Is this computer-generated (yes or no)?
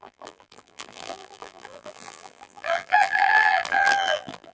yes